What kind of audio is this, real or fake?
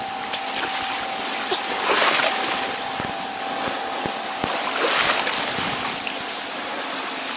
real